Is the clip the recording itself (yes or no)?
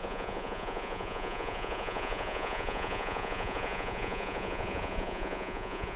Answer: no